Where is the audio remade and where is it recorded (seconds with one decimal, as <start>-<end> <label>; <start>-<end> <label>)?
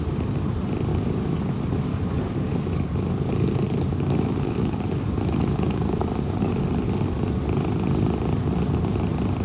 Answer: 0.0-0.9 recorded; 0.9-1.4 remade; 1.4-1.9 recorded; 1.9-6.5 remade; 6.5-9.4 recorded